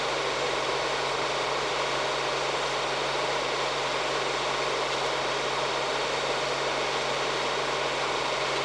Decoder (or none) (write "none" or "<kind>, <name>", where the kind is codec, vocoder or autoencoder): none